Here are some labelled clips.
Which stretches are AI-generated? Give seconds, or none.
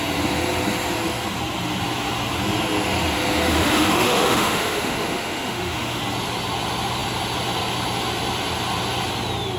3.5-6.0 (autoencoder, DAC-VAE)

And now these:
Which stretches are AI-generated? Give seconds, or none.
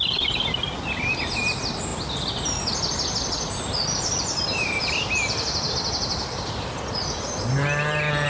none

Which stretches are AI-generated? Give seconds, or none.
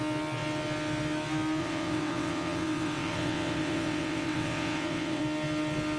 1.6-5.2 (vocoder, WaveNeXt)